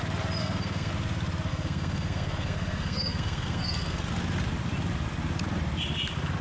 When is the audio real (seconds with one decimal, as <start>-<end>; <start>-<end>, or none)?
0.0-0.4; 0.9-1.5; 4.0-6.4